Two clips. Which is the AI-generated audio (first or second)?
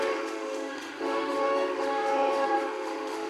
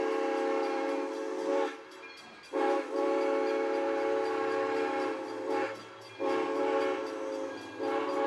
first